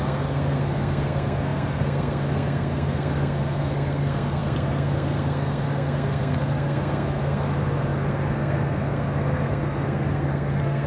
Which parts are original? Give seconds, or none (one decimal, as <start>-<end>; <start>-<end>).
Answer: none